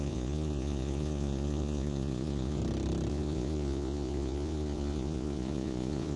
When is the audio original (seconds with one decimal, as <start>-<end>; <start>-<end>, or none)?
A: 2.6-3.1